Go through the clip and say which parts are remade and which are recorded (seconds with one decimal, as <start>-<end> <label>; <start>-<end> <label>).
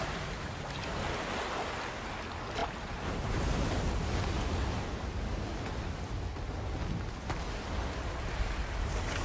0.0-9.2 recorded